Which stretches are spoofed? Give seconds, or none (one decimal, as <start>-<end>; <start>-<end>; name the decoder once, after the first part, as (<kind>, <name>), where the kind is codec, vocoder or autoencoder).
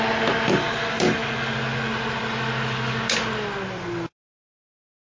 none